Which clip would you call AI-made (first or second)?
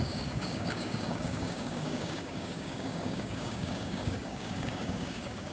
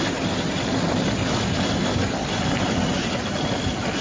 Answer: first